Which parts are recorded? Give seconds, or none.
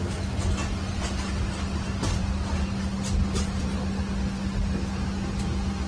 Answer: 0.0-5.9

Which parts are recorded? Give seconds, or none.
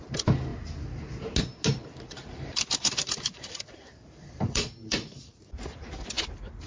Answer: 0.0-1.8; 5.4-6.7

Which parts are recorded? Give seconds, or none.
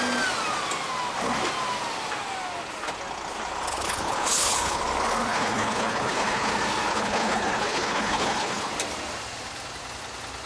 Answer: 0.0-3.7; 4.8-5.3; 6.5-6.9; 8.7-10.5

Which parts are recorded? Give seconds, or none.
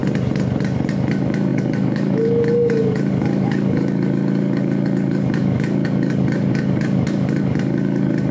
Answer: 0.0-1.1